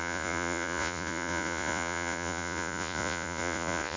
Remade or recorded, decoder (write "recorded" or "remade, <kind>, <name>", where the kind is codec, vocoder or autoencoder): remade, vocoder, Vocos